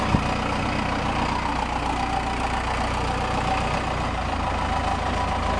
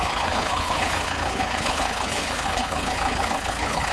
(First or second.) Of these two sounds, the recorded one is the first